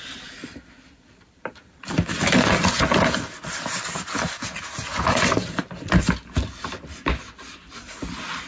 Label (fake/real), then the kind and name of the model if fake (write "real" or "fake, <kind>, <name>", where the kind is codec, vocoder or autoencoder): real